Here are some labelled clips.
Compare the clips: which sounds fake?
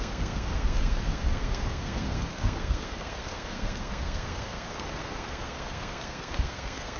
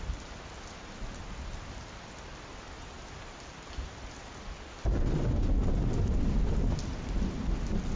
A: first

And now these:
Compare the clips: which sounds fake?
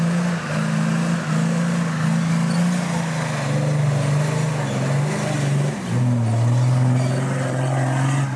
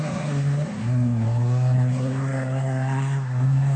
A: second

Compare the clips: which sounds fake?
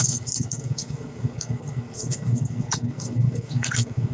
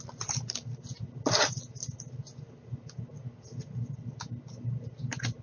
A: first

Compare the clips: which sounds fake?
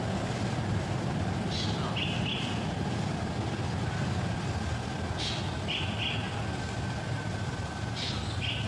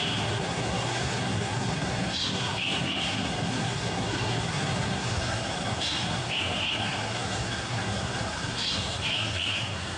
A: second